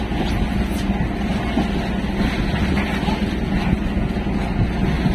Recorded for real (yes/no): yes